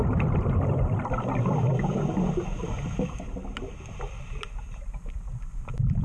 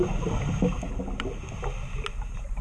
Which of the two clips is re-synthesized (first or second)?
first